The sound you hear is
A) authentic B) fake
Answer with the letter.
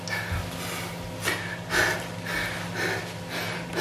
A